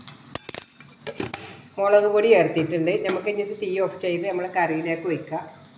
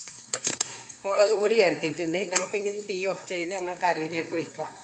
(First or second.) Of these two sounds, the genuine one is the first